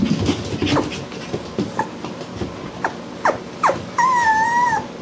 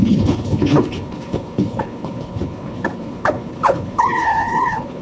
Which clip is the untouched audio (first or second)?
first